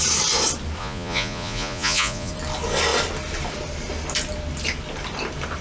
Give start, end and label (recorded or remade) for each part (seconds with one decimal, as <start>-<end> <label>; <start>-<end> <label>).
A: 0.0-0.8 recorded; 0.8-2.3 remade; 2.3-5.6 recorded